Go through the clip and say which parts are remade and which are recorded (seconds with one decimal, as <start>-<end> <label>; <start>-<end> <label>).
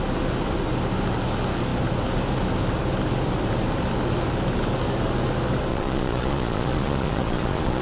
0.0-5.7 recorded; 5.7-7.8 remade